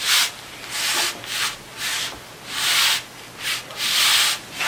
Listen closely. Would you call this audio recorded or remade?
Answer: recorded